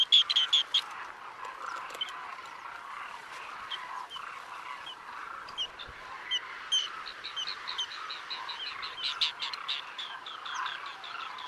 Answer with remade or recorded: recorded